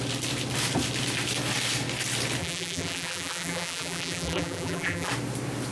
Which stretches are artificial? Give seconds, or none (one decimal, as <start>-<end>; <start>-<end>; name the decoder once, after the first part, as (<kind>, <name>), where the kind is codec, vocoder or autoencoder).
2.4-5.1 (vocoder, BigVGAN v2)